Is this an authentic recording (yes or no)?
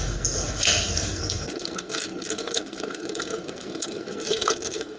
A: no